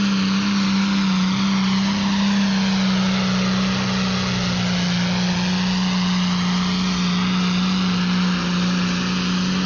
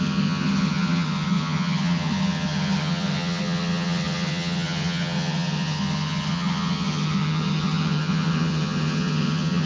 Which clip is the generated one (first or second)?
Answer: second